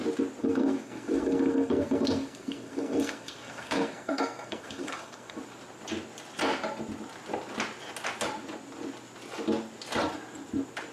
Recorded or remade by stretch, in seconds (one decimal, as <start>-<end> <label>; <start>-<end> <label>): 0.0-0.4 recorded; 0.4-5.4 remade; 5.4-10.9 recorded